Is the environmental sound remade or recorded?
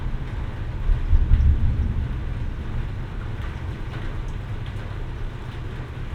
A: recorded